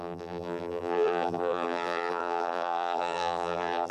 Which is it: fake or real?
fake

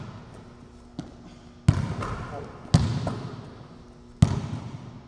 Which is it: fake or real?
real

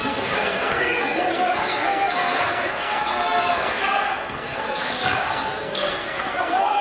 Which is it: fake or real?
fake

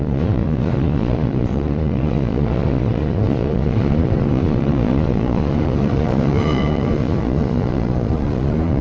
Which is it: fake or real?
fake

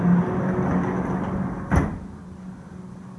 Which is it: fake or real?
real